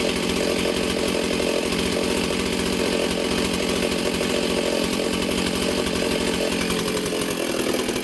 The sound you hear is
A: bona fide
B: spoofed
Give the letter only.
B